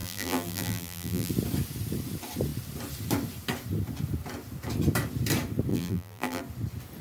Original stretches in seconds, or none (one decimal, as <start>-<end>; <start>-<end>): 1.3-5.7; 6.4-7.0